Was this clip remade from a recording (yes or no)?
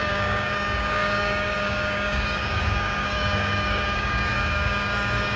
yes